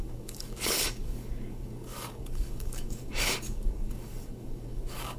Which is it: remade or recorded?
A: remade